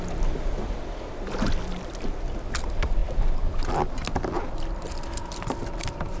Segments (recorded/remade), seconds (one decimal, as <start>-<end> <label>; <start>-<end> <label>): 0.0-6.2 recorded